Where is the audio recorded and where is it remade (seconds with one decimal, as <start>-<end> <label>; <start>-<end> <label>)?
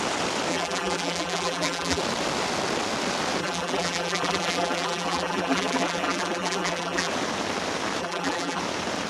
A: 0.0-0.5 recorded; 0.5-2.0 remade; 2.0-3.4 recorded; 3.4-7.1 remade; 7.1-8.0 recorded; 8.0-8.6 remade; 8.6-9.1 recorded